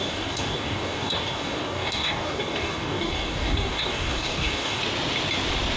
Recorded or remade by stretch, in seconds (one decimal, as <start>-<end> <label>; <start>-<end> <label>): 0.0-4.8 remade; 4.8-5.8 recorded